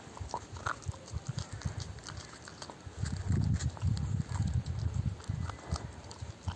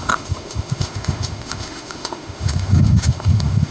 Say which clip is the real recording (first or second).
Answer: first